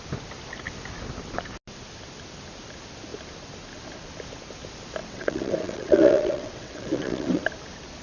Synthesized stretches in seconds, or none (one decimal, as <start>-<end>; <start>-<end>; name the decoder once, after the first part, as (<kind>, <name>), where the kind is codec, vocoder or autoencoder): 5.0-7.4 (vocoder, WaveNeXt)